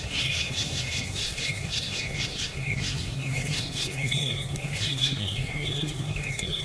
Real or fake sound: fake